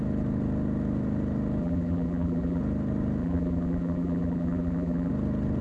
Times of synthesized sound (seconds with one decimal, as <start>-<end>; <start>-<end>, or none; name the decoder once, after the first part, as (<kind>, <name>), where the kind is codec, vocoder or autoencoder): 1.6-2.6 (vocoder, BigVGAN v2); 3.2-5.1